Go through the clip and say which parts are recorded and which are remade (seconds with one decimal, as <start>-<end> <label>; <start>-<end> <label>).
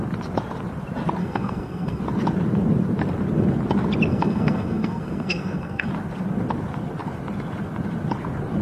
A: 0.0-1.2 recorded; 1.2-2.0 remade; 2.0-4.1 recorded; 4.1-5.9 remade; 5.9-8.6 recorded